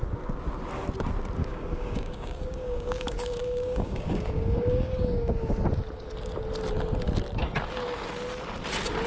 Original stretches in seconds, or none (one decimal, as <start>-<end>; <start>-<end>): 0.0-1.4; 5.6-9.1